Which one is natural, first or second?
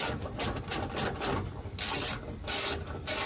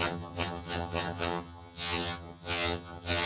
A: first